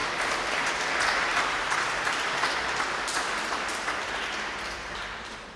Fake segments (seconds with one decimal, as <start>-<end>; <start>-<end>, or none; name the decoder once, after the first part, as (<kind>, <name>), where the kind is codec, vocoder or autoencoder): 0.0-0.9 (vocoder, BigVGAN v2)